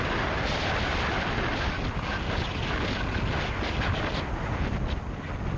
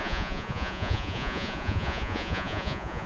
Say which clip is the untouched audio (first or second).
first